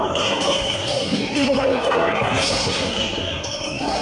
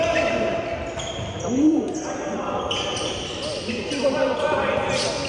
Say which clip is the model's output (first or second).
first